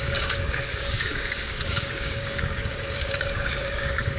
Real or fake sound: fake